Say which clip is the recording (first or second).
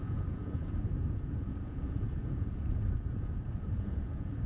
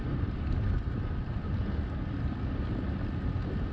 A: second